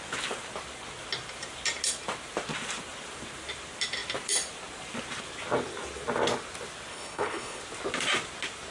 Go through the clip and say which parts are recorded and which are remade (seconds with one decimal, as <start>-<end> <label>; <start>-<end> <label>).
0.0-6.9 recorded; 6.9-7.6 remade; 7.6-8.7 recorded